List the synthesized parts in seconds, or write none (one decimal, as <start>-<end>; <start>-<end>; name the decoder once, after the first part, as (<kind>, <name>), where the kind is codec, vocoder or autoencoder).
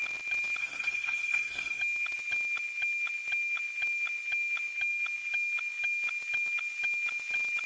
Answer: 0.6-1.8 (codec, SNAC)